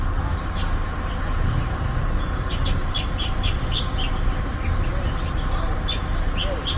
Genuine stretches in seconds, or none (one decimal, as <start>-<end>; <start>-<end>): 0.0-2.8; 3.6-6.8